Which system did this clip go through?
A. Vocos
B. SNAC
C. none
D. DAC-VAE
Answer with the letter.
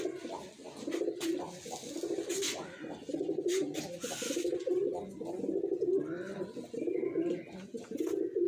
C